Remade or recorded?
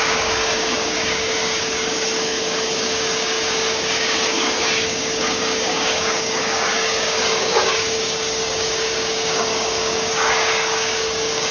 remade